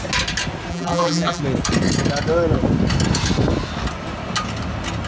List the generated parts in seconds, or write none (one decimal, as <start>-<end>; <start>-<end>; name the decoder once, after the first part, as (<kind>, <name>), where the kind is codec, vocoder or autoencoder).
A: 0.7-1.4 (vocoder, BigVGAN v2)